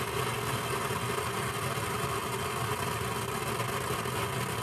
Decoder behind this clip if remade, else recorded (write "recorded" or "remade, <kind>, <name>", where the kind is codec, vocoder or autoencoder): recorded